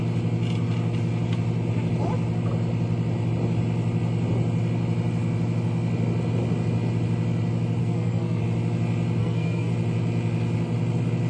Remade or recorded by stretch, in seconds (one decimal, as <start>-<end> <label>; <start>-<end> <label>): 0.0-7.8 recorded; 7.8-8.4 remade; 8.4-9.2 recorded; 9.2-9.7 remade; 9.7-11.3 recorded